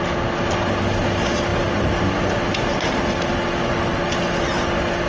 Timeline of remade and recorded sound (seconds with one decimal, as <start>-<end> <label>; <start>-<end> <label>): 0.0-5.1 recorded